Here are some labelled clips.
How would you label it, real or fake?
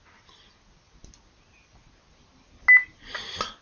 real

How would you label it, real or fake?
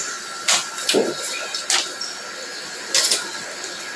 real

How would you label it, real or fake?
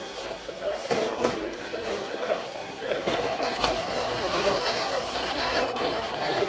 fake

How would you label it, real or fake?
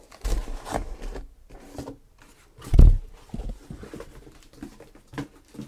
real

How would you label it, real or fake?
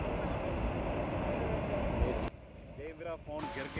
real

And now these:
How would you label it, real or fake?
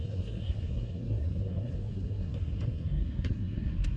fake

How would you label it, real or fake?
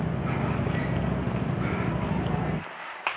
real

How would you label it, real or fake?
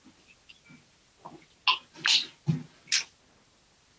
real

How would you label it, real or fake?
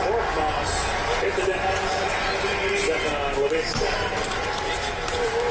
real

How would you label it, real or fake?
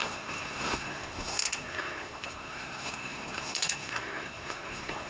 fake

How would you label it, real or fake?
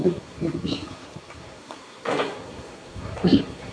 fake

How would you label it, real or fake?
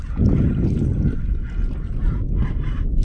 real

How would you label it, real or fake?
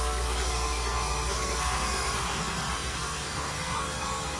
fake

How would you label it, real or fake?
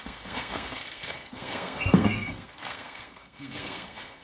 fake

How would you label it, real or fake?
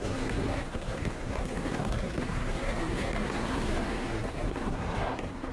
fake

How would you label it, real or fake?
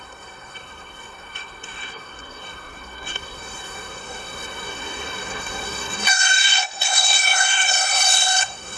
fake